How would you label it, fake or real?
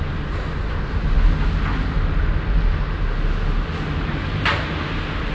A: real